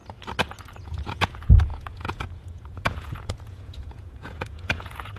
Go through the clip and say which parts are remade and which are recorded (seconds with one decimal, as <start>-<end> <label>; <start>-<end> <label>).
0.0-0.7 recorded; 0.7-5.2 remade